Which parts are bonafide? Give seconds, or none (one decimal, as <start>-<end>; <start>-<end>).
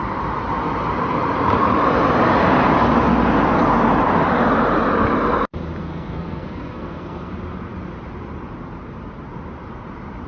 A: 0.0-5.8; 7.3-10.3